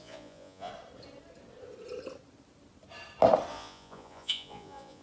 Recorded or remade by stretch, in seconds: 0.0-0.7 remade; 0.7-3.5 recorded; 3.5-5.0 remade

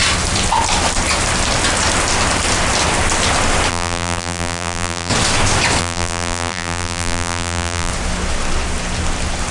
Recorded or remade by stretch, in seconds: 0.0-3.7 recorded; 3.7-5.1 remade; 5.1-5.8 recorded; 5.8-7.9 remade; 7.9-9.5 recorded

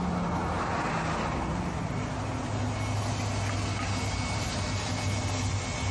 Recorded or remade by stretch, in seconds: 0.0-5.9 recorded

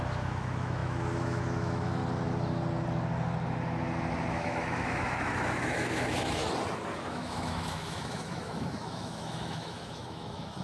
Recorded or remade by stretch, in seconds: 0.0-2.0 remade; 2.0-4.3 recorded; 4.3-6.4 remade; 6.4-7.1 recorded; 7.1-10.6 remade